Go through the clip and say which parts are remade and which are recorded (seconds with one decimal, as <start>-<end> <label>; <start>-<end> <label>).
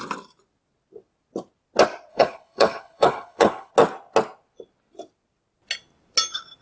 0.0-2.1 recorded; 2.1-3.7 remade; 3.7-6.6 recorded